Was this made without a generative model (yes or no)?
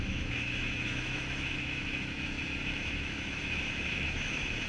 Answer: no